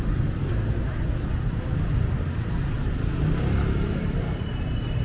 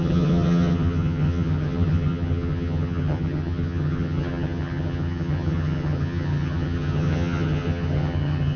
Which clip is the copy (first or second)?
second